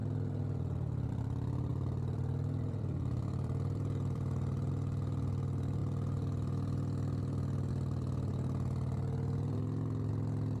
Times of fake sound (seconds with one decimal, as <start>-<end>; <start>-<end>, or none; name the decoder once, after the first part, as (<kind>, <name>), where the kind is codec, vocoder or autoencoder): 1.1-5.8 (vocoder, BigVGAN v2); 7.7-8.3; 10.1-10.6